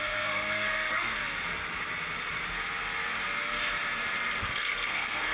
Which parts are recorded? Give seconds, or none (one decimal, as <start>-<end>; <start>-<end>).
1.2-4.4